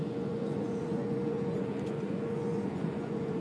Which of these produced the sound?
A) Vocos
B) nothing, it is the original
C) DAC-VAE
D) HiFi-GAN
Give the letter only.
A